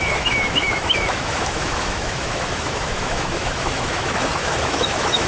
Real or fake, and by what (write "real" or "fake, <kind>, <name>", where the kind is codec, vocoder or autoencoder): fake, autoencoder, DAC-VAE